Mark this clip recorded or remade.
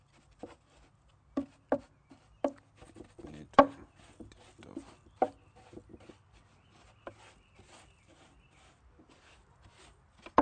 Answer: recorded